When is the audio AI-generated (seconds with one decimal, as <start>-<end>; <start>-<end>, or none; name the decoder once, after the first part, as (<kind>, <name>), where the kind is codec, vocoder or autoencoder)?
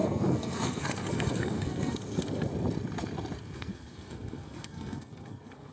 0.0-2.5 (codec, SNAC); 3.4-5.7